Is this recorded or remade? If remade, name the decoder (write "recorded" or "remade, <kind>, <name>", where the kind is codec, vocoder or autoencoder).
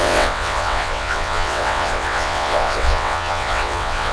remade, vocoder, WaveNeXt